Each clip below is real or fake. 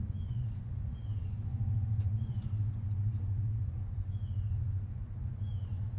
fake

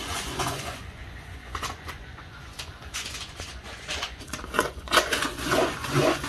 fake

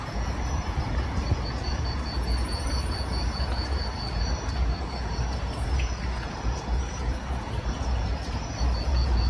fake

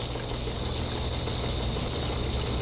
real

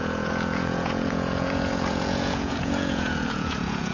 fake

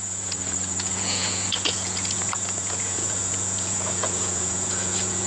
fake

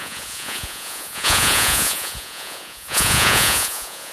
fake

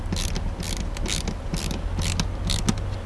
real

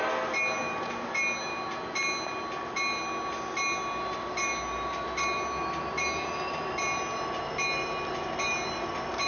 real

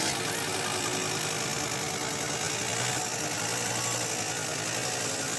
real